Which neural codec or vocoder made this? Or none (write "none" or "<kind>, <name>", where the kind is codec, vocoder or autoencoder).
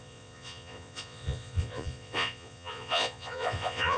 vocoder, Vocos